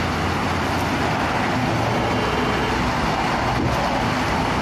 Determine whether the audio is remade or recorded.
recorded